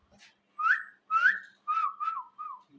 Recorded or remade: recorded